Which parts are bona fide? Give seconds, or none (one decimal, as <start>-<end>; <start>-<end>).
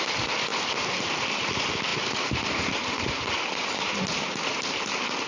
0.0-5.3